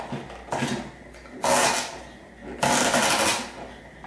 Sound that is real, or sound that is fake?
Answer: real